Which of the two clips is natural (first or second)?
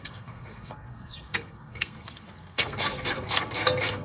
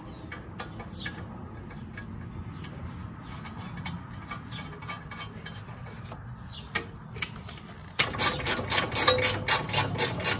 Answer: second